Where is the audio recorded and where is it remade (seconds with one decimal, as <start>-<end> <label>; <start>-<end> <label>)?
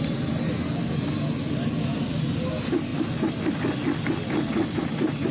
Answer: 0.0-5.3 recorded